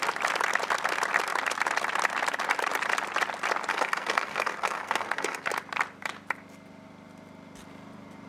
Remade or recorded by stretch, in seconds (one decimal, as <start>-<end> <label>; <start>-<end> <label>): 0.0-3.7 recorded; 3.7-5.5 remade; 5.5-8.3 recorded